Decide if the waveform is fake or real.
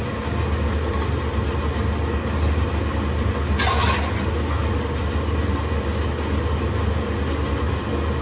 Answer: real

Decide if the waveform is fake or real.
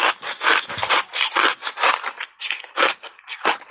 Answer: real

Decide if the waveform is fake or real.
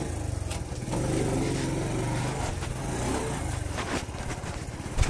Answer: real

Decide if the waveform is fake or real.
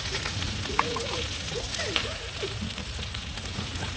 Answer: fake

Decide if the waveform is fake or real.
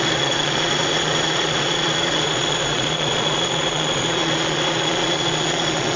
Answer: fake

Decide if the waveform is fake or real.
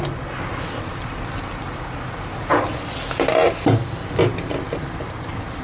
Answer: real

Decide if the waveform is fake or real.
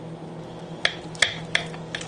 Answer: real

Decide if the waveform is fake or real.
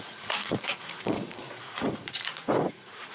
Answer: fake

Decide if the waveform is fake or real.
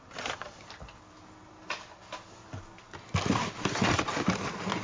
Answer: real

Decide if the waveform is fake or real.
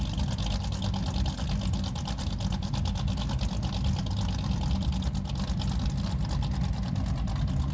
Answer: real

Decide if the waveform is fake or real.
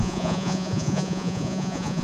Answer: fake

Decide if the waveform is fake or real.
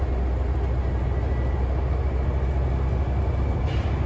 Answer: real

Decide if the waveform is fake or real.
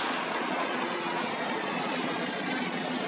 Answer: fake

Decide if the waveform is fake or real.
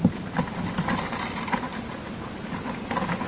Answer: real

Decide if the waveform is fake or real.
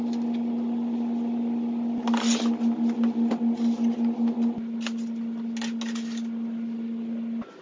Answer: real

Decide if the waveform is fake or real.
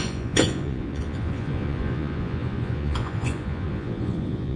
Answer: fake